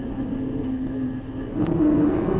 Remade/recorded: remade